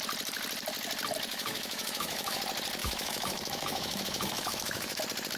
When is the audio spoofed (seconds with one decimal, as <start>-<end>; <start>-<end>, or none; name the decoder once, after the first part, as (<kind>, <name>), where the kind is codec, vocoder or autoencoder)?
1.3-2.4 (autoencoder, DAC-VAE); 2.8-5.0